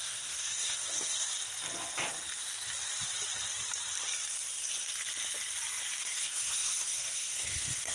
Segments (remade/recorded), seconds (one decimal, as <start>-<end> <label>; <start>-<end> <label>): 0.0-1.3 remade; 1.3-6.0 recorded; 6.0-7.9 remade